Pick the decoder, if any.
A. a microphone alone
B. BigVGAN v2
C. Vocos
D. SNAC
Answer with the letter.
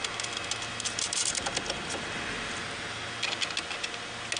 A